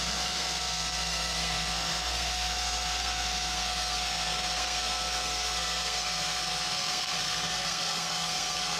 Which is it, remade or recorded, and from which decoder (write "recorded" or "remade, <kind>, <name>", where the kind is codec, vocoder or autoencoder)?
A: remade, codec, SNAC